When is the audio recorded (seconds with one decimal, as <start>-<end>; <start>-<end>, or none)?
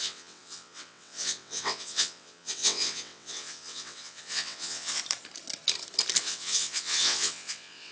5.0-6.2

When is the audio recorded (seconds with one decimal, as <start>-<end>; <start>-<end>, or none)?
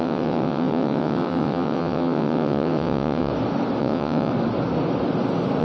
3.3-3.8; 4.3-5.6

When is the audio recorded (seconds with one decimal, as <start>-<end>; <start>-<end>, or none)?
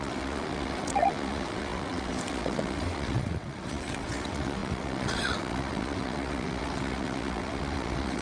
none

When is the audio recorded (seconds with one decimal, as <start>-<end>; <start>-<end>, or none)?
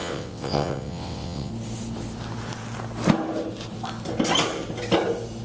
1.5-5.4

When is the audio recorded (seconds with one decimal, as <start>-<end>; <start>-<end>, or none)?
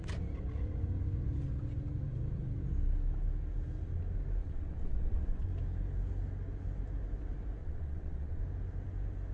0.0-4.4; 5.5-7.6; 8.4-9.3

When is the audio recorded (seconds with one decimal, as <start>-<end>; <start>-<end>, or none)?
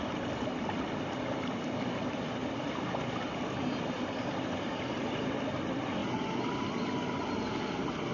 0.0-8.1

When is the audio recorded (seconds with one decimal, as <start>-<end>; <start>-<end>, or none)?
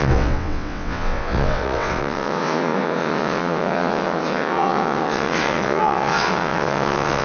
none